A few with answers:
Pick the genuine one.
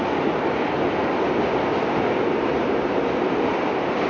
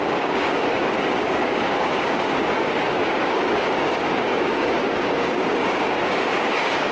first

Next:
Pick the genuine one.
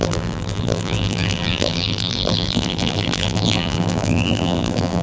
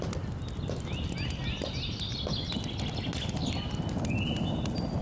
second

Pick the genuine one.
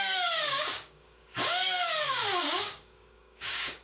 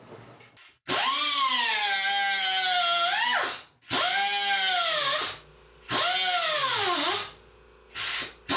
second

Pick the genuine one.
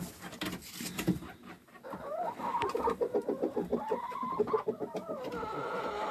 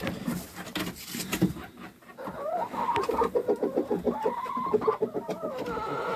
second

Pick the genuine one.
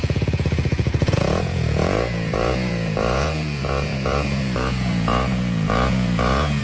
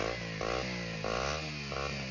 second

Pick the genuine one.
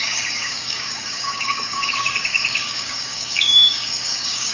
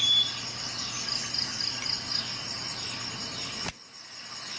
second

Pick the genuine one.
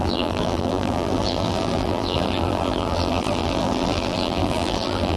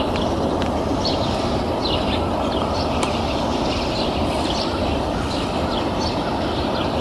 second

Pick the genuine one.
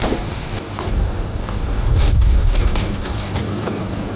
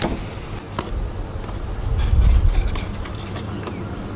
second